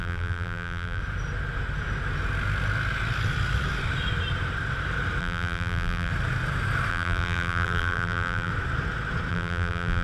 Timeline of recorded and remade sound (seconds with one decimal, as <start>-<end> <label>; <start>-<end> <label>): 0.0-1.0 remade; 1.0-5.2 recorded; 5.2-6.1 remade; 6.1-6.9 recorded; 6.9-8.5 remade; 8.5-9.3 recorded; 9.3-10.0 remade